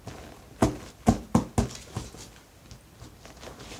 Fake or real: real